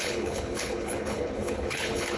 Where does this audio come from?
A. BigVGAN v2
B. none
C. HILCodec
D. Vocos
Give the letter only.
C